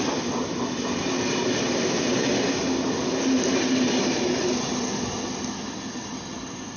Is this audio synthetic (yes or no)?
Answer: no